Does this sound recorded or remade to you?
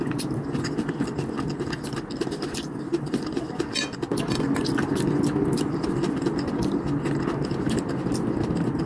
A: recorded